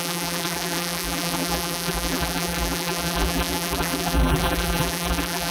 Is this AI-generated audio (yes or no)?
yes